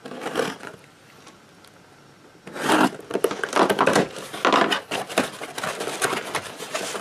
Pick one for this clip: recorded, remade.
recorded